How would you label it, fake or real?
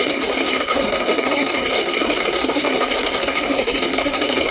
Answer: fake